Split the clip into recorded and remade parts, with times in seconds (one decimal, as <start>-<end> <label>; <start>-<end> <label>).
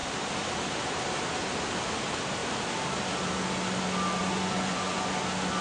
0.0-4.2 recorded; 4.2-5.1 remade; 5.1-5.6 recorded